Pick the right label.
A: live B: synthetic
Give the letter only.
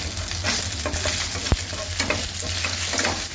A